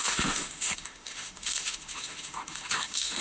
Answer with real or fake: fake